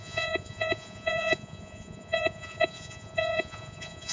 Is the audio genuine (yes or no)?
no